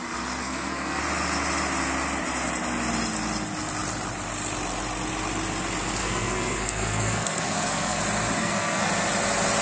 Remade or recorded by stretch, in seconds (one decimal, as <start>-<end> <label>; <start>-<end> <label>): 0.0-0.4 recorded; 0.4-1.0 remade; 1.0-6.0 recorded; 6.0-8.0 remade; 8.0-8.4 recorded; 8.4-8.9 remade; 8.9-9.6 recorded